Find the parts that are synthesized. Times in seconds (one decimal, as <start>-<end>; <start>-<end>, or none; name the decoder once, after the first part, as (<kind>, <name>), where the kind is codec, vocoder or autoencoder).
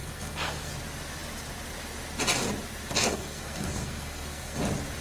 0.0-0.7 (codec, SNAC); 3.1-4.6